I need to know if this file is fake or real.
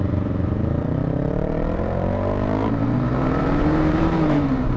fake